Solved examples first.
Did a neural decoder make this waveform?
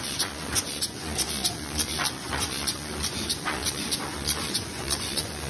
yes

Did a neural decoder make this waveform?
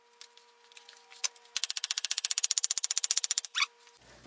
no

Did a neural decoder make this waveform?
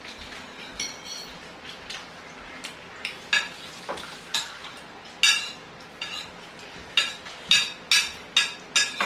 no